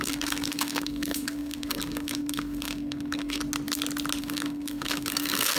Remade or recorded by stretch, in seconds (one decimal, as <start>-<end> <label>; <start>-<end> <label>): 0.0-3.4 remade; 3.4-4.2 recorded; 4.2-5.6 remade